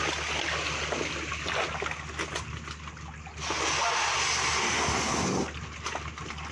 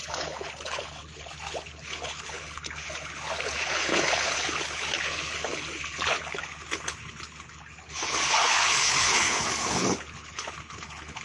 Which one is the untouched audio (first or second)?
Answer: first